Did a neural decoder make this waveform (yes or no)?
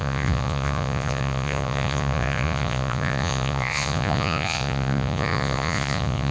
yes